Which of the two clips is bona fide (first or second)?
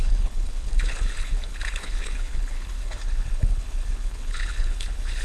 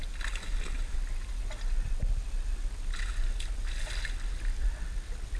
second